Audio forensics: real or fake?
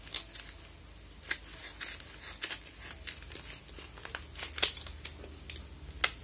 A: real